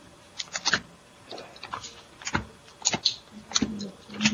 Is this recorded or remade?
recorded